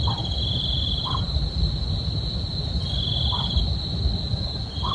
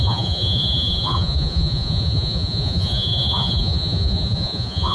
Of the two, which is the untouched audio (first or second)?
first